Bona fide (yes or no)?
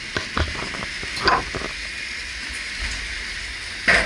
yes